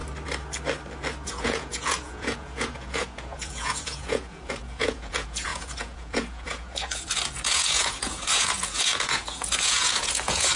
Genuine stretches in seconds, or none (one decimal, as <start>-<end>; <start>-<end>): 0.0-1.3